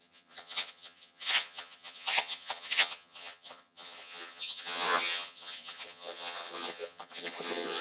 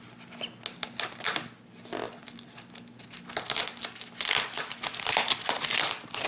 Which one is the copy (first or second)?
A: first